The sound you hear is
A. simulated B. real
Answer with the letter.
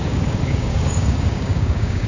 A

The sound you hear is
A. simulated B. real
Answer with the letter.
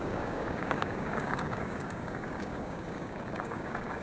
A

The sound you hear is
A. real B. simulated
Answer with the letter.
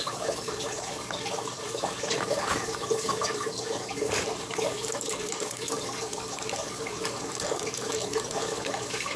B